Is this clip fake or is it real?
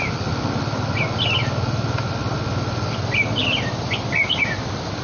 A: real